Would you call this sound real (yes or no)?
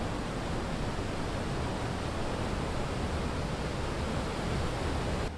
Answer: yes